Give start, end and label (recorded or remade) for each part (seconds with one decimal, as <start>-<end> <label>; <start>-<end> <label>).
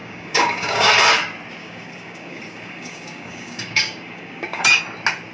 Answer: 0.0-0.9 remade; 0.9-1.6 recorded; 1.6-4.8 remade; 4.8-5.3 recorded